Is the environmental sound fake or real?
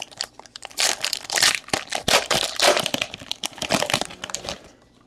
fake